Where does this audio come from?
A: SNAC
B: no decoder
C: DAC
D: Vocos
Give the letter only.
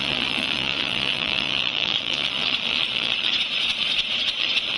D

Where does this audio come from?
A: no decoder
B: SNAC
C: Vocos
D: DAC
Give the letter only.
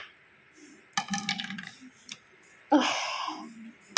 A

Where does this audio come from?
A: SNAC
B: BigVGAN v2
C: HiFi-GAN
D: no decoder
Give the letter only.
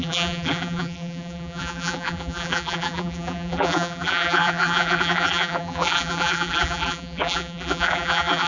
B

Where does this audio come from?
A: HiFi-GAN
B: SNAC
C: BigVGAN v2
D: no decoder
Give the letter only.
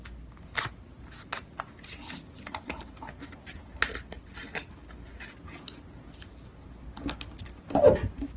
D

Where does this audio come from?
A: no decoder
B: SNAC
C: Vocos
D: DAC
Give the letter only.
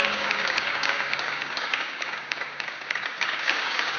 D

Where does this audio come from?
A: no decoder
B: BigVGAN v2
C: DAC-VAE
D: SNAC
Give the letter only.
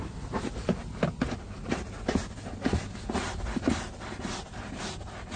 A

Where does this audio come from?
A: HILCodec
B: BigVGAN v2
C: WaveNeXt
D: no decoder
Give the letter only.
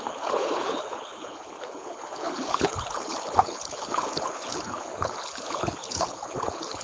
A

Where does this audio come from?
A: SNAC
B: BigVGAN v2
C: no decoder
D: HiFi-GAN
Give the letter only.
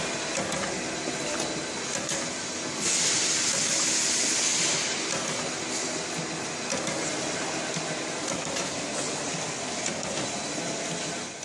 C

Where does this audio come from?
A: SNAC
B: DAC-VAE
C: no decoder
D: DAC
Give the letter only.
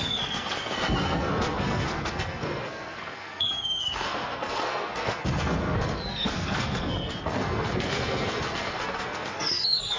A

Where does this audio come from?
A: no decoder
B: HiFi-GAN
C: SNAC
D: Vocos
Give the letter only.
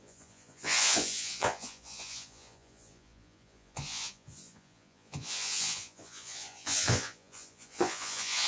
D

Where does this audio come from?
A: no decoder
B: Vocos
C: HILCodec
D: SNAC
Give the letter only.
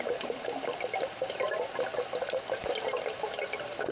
A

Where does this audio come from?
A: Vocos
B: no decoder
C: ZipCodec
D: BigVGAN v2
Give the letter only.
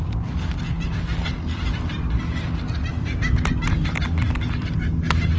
B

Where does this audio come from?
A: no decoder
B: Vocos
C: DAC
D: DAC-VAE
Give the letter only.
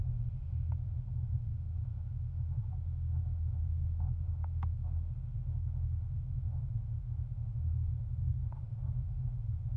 D